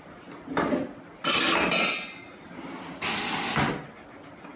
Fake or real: real